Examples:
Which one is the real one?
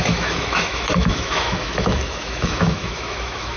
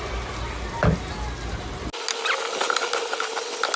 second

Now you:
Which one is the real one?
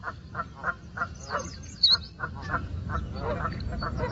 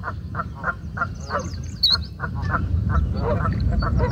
first